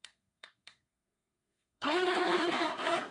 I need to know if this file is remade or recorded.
remade